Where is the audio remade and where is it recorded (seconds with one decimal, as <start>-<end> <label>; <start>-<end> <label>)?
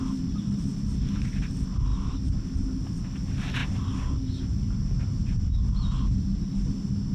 0.0-7.1 recorded